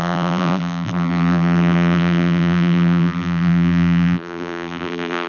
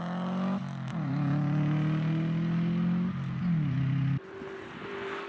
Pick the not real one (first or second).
first